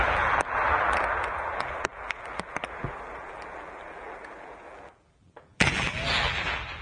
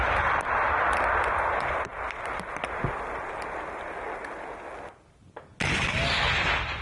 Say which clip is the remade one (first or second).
first